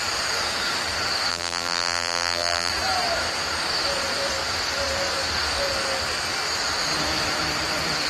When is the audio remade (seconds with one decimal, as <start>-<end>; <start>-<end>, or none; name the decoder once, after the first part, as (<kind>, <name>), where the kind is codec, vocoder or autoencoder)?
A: 1.3-2.7 (vocoder, BigVGAN v2)